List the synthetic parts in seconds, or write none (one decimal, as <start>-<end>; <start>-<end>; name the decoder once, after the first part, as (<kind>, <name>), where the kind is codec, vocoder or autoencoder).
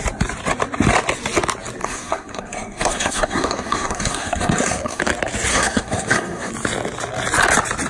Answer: 1.8-5.0 (codec, SNAC); 5.5-6.5